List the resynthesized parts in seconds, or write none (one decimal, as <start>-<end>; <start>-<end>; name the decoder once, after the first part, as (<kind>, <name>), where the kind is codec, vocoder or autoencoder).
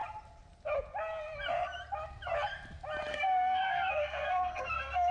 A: 3.1-5.1 (codec, SNAC)